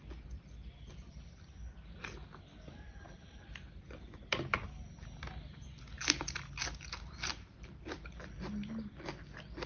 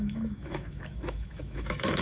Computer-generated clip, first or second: second